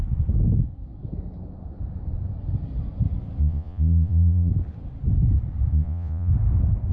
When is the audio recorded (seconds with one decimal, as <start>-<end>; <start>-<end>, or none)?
0.0-3.4; 4.5-5.7; 6.3-6.9